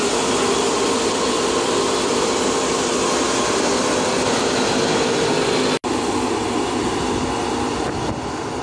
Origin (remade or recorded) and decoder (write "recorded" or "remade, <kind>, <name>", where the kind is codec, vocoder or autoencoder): recorded